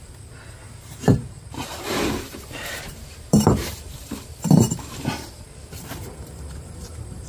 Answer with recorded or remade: remade